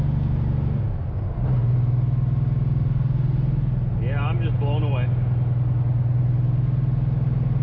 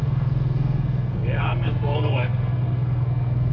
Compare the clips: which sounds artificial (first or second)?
second